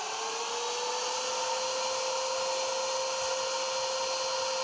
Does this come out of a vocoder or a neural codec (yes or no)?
no